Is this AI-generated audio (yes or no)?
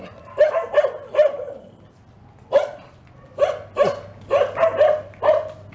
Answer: no